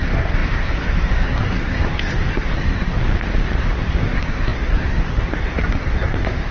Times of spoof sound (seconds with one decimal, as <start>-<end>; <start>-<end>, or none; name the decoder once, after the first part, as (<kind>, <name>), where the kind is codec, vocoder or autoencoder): 0.0-3.0 (codec, SNAC); 3.6-6.5